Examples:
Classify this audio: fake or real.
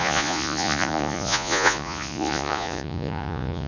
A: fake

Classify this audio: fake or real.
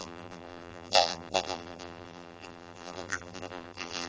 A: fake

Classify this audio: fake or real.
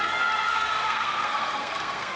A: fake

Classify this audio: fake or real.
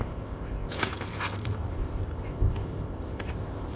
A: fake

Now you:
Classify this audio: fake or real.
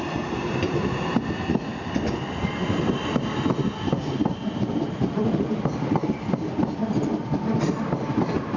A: real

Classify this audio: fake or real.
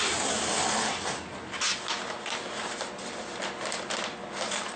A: real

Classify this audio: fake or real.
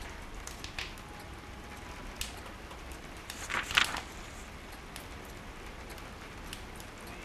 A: real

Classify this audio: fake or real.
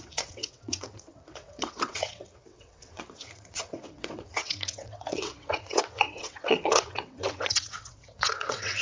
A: fake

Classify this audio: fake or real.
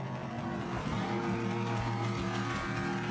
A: real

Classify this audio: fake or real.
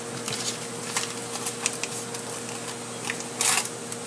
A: real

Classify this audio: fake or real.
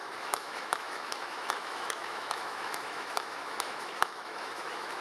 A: fake